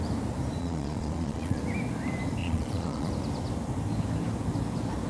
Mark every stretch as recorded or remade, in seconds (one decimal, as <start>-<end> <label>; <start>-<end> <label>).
0.0-0.6 recorded; 0.6-1.6 remade; 1.6-2.4 recorded; 2.4-3.1 remade; 3.1-5.1 recorded